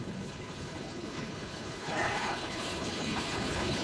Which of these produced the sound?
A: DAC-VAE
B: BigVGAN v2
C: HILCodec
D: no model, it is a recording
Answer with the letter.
C